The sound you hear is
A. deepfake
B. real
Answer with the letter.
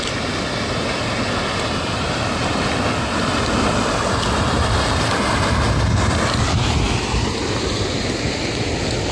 B